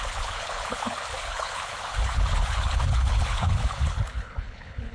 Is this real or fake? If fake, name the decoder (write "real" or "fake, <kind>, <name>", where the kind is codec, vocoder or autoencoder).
fake, codec, HILCodec